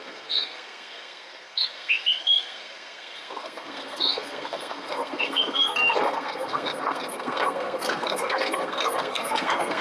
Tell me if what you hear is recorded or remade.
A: remade